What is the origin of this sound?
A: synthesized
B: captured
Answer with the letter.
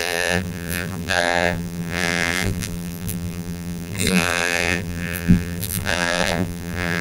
A